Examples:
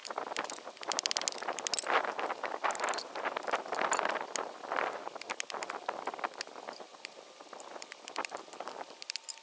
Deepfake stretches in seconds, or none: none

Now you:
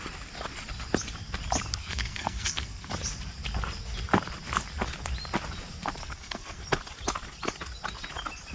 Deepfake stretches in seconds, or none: 1.8-2.9 (codec, SNAC); 6.0-6.6

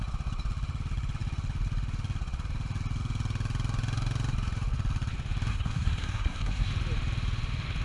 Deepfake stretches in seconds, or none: 5.5-6.7 (codec, SNAC)

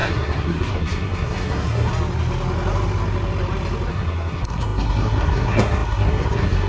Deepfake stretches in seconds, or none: 0.0-1.9 (codec, SNAC); 3.9-6.7

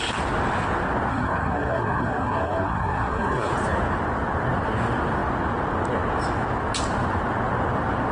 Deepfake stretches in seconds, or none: 1.1-3.5 (codec, SNAC)

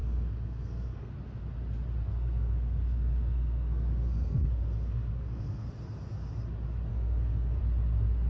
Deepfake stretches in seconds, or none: 0.0-1.1 (codec, SNAC); 2.1-5.7; 6.9-7.6

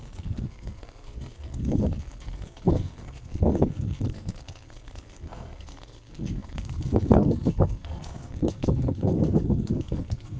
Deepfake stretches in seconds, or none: 0.0-10.4 (codec, SNAC)